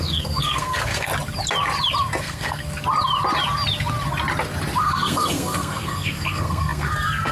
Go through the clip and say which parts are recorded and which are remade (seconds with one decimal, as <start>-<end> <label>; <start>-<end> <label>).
0.0-1.1 remade; 1.1-2.2 recorded; 2.2-2.6 remade; 2.6-4.8 recorded; 4.8-7.3 remade